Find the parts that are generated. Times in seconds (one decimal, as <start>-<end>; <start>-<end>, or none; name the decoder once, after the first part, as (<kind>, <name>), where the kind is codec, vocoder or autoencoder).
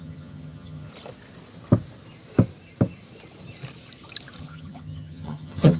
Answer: 0.0-0.9 (vocoder, HiFi-GAN); 4.4-5.8